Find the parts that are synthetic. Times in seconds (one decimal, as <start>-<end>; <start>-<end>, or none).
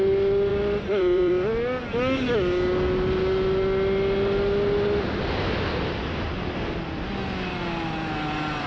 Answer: 0.5-1.3